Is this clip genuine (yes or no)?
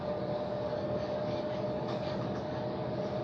no